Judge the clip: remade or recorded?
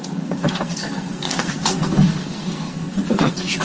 remade